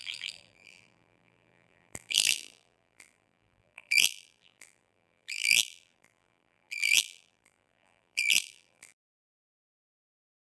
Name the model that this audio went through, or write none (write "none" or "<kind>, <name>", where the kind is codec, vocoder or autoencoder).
vocoder, BigVGAN v2